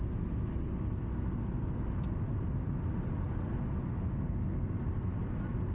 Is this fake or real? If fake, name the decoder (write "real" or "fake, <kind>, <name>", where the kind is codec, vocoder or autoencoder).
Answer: real